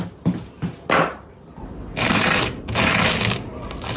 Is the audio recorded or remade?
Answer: recorded